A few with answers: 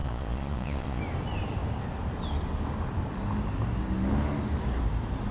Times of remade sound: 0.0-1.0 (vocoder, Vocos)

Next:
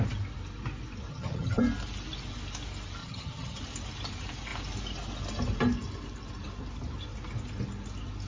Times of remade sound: 1.1-1.6 (vocoder, HiFi-GAN); 3.0-3.6